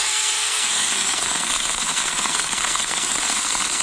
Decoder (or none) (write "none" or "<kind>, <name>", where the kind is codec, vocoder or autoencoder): codec, SNAC